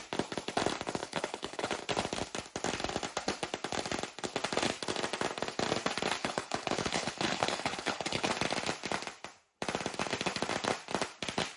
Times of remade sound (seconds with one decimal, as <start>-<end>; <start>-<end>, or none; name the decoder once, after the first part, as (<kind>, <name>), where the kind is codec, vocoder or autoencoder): 1.0-1.8 (codec, HILCodec); 6.2-8.3